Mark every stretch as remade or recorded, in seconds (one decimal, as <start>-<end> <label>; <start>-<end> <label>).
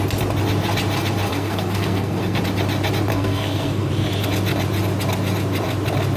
0.0-1.3 recorded; 1.3-2.4 remade; 2.4-3.1 recorded; 3.1-3.9 remade; 3.9-6.2 recorded